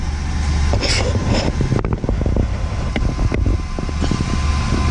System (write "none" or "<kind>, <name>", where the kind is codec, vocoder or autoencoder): none